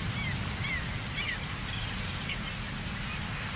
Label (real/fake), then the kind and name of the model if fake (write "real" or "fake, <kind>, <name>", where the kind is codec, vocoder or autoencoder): real